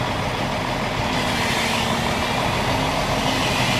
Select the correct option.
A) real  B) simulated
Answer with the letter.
A